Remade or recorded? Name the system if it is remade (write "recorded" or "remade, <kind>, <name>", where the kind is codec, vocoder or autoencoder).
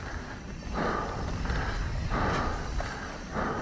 recorded